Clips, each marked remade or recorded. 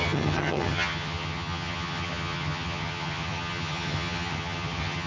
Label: remade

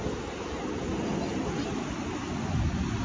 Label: recorded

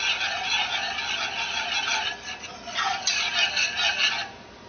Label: recorded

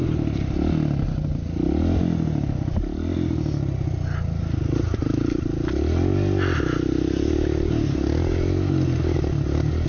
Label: recorded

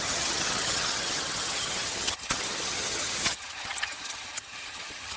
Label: remade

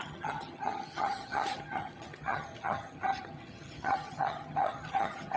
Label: remade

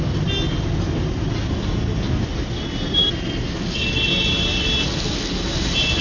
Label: recorded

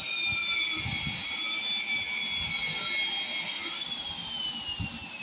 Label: recorded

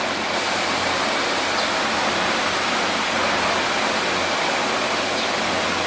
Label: recorded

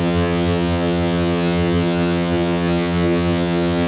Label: remade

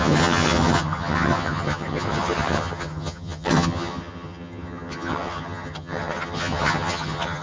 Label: remade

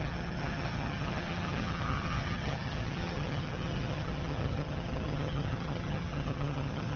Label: remade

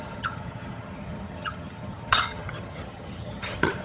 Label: remade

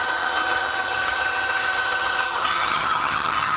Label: remade